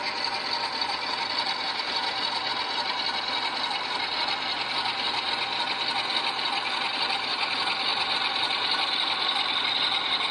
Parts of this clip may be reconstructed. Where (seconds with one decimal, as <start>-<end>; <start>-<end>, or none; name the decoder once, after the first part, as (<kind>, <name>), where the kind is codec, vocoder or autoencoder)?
none